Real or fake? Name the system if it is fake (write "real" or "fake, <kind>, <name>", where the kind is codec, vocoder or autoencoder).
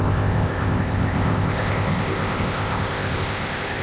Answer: fake, codec, ZipCodec